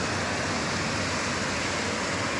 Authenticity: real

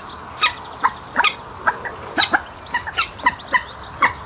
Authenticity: fake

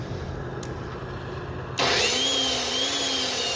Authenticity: real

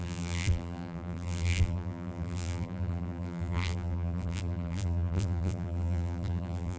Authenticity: fake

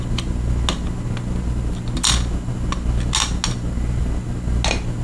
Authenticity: real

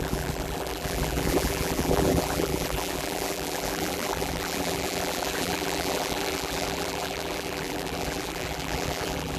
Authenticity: fake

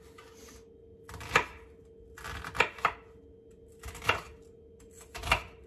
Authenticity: real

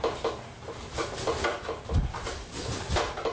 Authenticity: fake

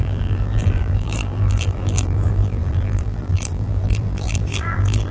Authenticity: fake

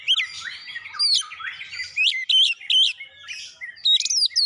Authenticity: real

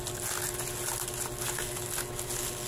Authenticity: real